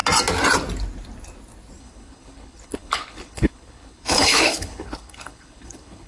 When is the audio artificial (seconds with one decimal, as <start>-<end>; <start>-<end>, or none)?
1.8-6.1